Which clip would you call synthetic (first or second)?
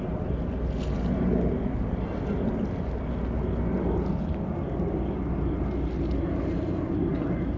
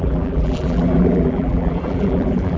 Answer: second